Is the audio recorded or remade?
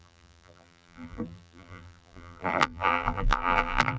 remade